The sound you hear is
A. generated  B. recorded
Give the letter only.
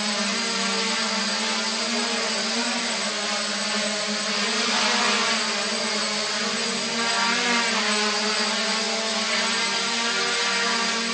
B